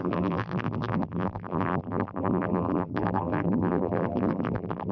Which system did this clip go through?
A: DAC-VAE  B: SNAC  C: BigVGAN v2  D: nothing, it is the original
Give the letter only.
C